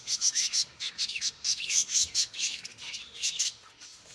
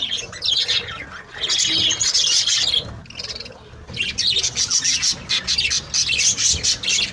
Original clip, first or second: second